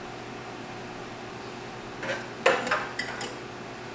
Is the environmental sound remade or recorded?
recorded